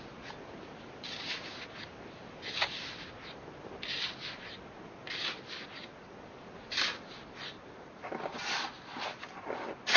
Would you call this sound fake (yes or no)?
no